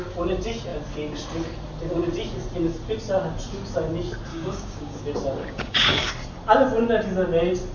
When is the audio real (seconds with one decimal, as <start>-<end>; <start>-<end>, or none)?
0.0-4.3; 5.0-5.4; 6.1-7.7